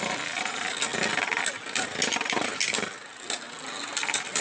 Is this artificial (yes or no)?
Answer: no